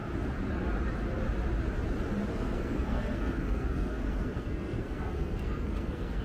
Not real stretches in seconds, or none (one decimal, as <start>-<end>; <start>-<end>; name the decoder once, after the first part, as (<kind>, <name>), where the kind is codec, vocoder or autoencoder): 2.3-6.2 (codec, SNAC)